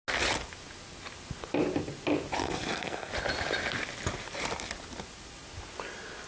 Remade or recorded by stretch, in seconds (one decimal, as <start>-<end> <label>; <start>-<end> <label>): 0.0-2.4 recorded; 2.4-3.1 remade; 3.1-6.3 recorded